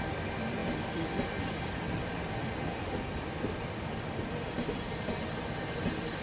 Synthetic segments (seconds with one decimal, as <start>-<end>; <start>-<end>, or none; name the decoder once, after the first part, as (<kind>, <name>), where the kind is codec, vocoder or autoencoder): none